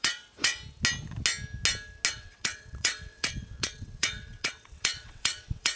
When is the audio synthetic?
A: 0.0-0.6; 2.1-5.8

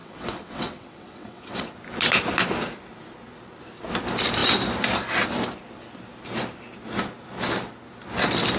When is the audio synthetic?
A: 0.0-1.7

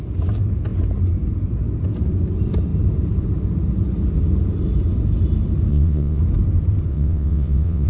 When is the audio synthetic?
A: 5.7-6.2; 6.9-7.9

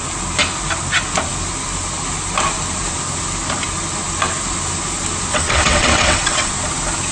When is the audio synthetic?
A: 5.3-6.5